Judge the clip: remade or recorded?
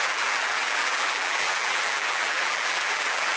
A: remade